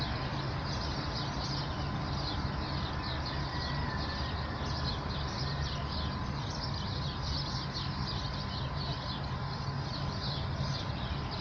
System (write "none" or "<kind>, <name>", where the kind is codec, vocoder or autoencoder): none